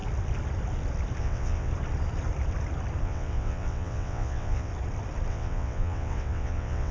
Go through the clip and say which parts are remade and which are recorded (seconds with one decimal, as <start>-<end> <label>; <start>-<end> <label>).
0.0-1.2 recorded; 1.2-1.7 remade; 1.7-3.0 recorded; 3.0-4.7 remade; 4.7-5.3 recorded; 5.3-6.9 remade